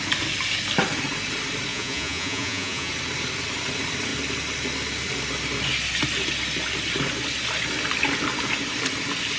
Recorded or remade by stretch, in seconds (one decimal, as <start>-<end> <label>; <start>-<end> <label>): 0.0-1.7 recorded; 1.7-2.9 remade; 2.9-9.4 recorded

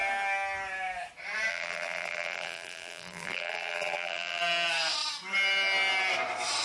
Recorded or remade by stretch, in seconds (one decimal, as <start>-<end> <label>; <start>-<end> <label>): 0.0-1.5 recorded; 1.5-4.4 remade; 4.4-6.6 recorded